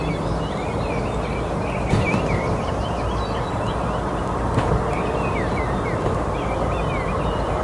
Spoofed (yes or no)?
no